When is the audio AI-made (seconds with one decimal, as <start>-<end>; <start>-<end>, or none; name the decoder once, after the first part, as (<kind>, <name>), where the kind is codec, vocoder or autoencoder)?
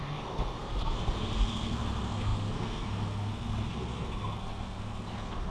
0.0-5.5 (codec, SNAC)